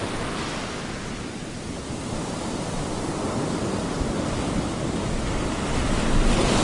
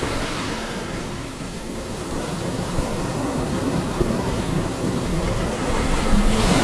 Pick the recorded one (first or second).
first